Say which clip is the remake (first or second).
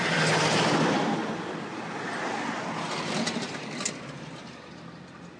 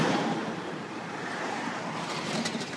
second